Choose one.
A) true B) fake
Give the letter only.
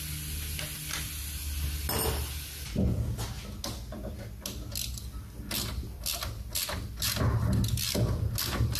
A